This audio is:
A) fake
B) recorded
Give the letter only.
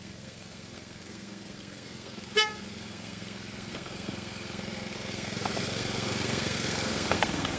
A